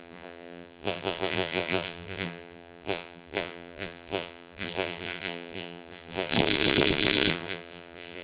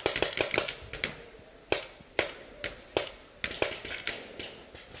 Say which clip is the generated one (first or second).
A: first